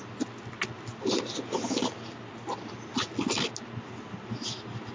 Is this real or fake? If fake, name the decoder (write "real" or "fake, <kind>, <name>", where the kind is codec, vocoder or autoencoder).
real